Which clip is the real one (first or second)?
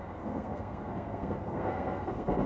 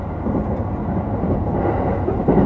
second